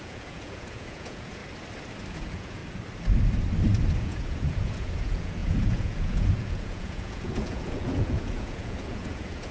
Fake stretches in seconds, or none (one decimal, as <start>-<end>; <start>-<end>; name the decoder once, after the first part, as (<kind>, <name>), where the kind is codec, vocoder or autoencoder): 0.0-1.4 (vocoder, Vocos); 2.1-2.6; 4.0-9.5